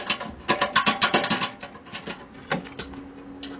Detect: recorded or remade recorded